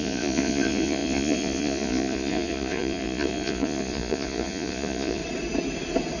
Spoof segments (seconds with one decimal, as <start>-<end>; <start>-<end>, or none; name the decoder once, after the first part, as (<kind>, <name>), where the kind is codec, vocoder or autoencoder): 0.0-5.2 (vocoder, Vocos)